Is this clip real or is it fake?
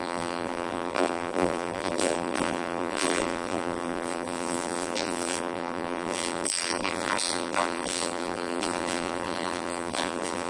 fake